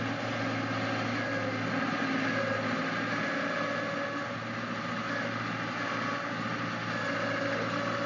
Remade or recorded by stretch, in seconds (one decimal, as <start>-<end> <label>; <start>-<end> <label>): 0.0-8.1 recorded